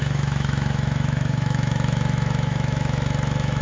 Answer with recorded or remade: remade